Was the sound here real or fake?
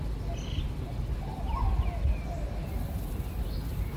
real